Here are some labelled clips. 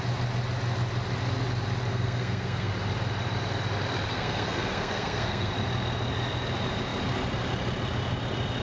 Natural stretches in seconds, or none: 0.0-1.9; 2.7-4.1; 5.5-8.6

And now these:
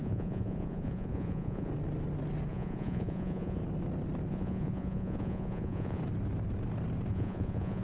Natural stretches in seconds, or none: 1.7-2.5; 3.6-4.3; 6.0-7.1

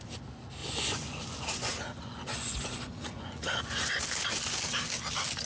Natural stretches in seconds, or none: 0.0-0.6; 3.9-5.5

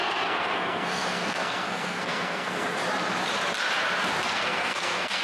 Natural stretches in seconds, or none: 2.8-4.3